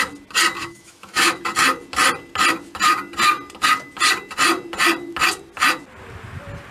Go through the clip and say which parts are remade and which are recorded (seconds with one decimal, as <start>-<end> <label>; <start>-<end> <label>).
0.0-0.6 recorded; 0.6-1.4 remade; 1.4-6.7 recorded